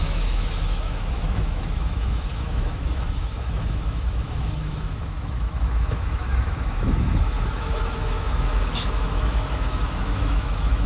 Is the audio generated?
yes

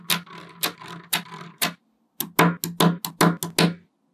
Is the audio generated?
no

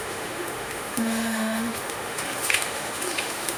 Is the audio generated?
yes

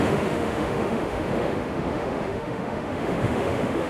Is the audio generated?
yes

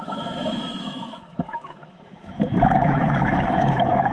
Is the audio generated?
yes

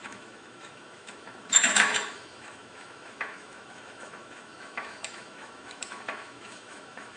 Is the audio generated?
yes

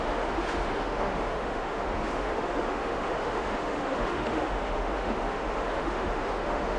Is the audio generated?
yes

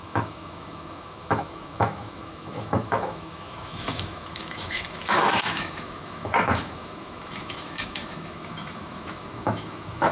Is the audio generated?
yes